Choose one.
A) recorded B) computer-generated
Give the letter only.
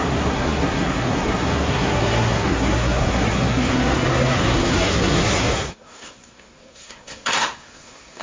B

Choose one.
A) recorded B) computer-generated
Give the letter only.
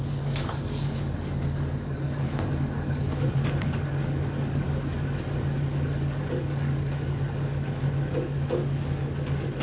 B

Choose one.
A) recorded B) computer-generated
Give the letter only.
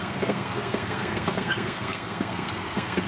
B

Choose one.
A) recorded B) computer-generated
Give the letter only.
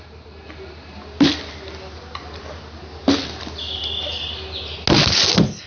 A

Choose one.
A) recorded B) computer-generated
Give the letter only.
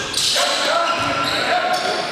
A